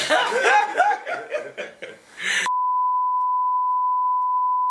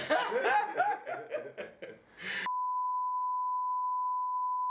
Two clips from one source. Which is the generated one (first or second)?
first